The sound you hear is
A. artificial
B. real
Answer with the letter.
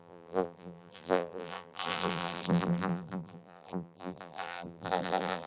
A